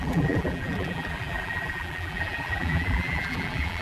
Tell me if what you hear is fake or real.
fake